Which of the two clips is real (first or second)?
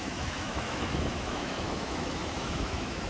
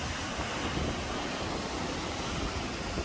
second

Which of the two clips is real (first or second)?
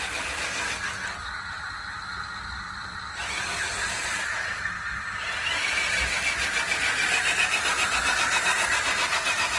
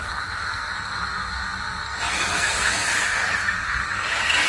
first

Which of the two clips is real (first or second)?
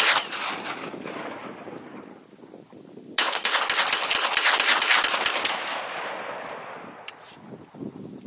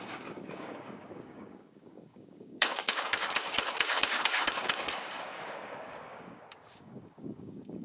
first